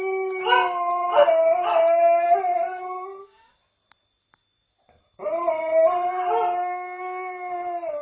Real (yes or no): yes